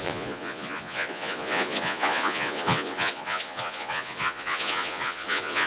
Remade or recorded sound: remade